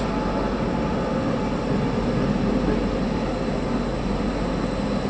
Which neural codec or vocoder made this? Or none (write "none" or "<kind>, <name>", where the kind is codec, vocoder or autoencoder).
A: none